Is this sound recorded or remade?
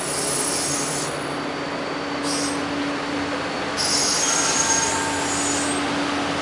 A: recorded